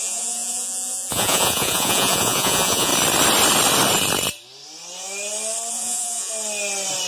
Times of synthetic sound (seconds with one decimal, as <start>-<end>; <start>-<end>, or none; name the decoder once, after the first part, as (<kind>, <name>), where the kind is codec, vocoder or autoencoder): 0.0-2.9 (vocoder, Vocos); 5.7-6.3